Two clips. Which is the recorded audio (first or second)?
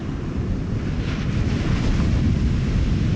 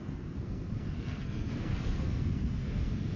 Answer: first